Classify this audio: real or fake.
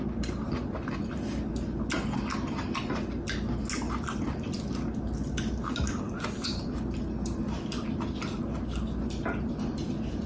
real